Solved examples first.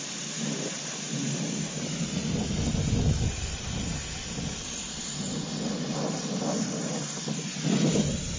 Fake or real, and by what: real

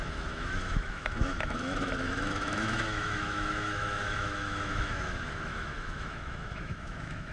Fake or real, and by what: fake, autoencoder, DAC-VAE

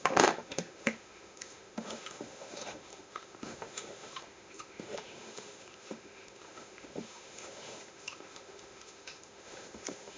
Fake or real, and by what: fake, autoencoder, DAC-VAE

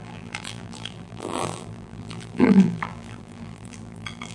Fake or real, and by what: fake, vocoder, BigVGAN v2